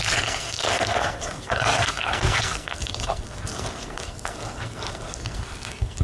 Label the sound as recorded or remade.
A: remade